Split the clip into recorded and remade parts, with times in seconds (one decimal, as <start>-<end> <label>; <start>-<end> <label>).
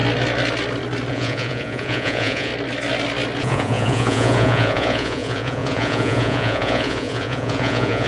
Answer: 0.0-1.1 recorded; 1.1-2.5 remade; 2.5-3.4 recorded; 3.4-8.1 remade